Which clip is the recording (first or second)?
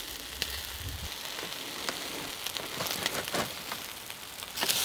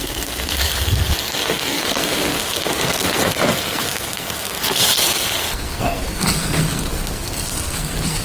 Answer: first